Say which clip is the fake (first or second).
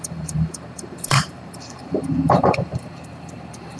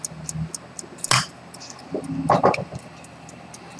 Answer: first